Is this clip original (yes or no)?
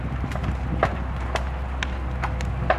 yes